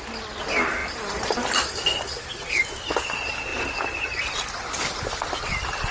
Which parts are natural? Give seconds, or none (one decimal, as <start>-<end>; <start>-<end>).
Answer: 0.0-5.9